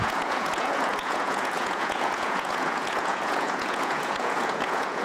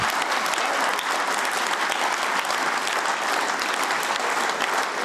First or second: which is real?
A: second